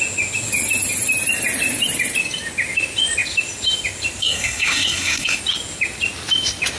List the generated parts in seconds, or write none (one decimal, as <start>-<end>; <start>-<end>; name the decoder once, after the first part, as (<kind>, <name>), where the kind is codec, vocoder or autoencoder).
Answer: 4.2-5.4 (codec, SNAC)